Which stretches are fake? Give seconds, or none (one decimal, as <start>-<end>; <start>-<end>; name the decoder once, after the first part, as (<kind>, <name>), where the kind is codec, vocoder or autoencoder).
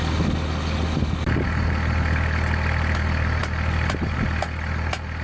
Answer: none